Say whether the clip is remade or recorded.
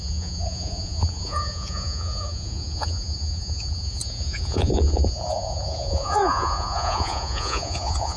remade